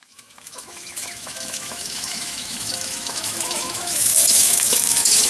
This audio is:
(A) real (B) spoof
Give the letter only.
B